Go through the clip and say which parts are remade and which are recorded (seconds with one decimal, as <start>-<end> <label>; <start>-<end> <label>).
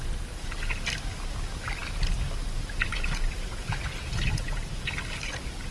0.0-4.3 recorded; 4.3-4.9 remade; 4.9-5.7 recorded